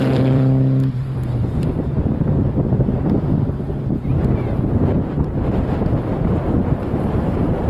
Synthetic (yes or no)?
yes